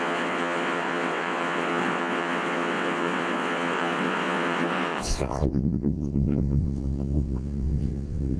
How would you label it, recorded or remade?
remade